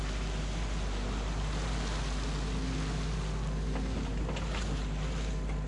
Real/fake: real